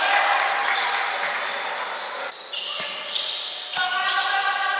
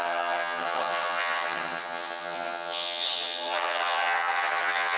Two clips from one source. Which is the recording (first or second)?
first